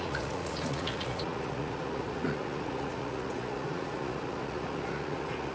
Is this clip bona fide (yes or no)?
no